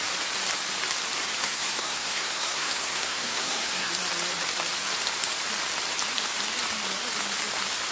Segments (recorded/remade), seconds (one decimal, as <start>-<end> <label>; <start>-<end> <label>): 0.0-1.4 recorded; 1.4-3.9 remade; 3.9-7.9 recorded